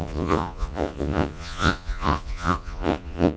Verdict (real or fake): fake